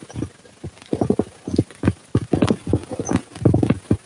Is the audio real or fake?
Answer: real